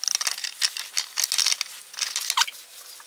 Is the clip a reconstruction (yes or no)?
no